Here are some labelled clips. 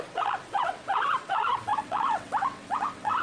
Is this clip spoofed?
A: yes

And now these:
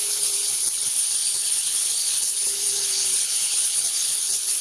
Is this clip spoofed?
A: yes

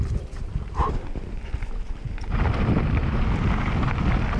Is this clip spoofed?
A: yes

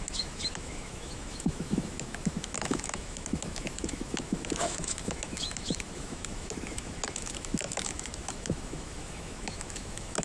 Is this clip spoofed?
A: yes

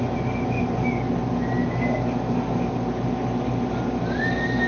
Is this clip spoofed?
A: no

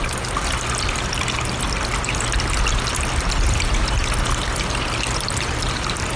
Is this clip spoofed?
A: no